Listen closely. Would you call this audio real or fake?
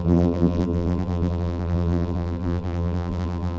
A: fake